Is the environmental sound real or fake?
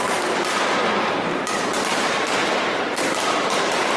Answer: fake